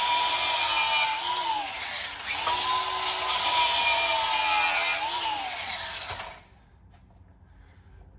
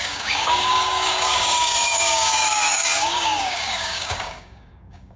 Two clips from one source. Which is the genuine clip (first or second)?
first